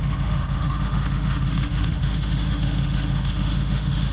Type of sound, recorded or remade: remade